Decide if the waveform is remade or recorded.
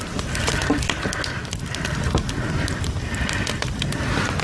recorded